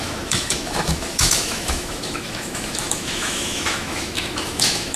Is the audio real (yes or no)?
no